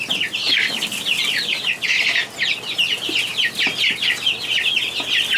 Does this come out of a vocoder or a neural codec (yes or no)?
no